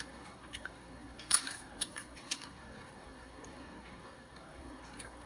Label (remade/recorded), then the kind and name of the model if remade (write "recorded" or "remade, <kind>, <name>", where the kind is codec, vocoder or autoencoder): remade, codec, SNAC